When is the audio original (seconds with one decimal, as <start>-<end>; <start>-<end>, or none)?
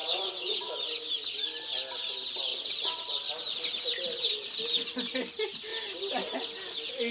0.7-2.5; 3.3-7.1